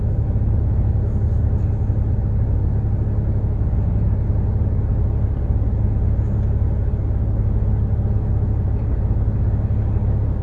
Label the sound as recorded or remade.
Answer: recorded